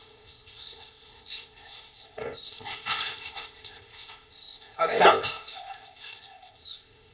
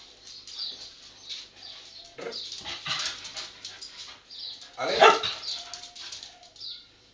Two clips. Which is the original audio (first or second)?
second